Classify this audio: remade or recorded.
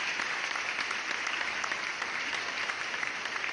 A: recorded